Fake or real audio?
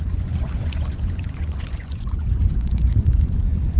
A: fake